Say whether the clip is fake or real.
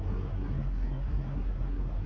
fake